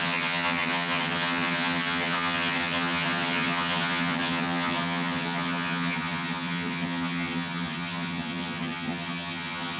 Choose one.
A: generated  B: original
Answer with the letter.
A